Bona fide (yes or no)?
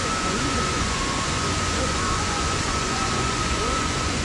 no